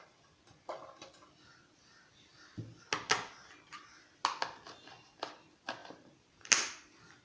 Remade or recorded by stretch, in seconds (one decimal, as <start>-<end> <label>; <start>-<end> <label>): 0.0-7.2 recorded